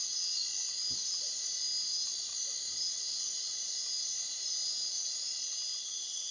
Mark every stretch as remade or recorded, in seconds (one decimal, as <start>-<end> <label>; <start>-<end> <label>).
0.0-6.3 recorded